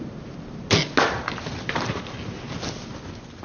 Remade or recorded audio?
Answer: recorded